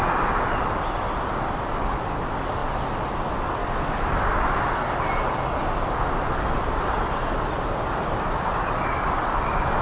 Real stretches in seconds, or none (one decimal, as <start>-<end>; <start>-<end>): 0.0-9.8